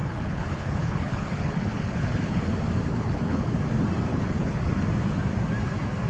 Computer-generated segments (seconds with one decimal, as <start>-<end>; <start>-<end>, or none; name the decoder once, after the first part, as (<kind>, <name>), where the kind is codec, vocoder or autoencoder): 0.0-2.5 (codec, HILCodec); 2.9-3.5; 4.1-4.7